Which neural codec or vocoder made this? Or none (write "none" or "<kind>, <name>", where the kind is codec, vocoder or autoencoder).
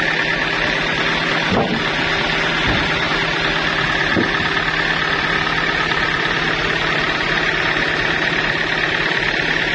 none